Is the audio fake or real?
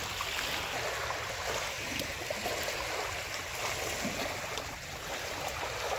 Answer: real